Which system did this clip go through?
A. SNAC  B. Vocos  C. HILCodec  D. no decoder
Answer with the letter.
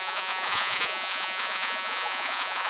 B